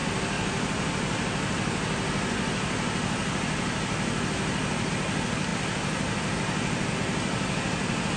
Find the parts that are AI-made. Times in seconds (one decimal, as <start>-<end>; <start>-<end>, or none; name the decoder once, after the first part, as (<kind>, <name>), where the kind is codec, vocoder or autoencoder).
none